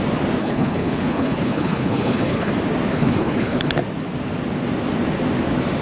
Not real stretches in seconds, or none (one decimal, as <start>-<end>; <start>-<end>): 0.4-2.5; 2.9-3.7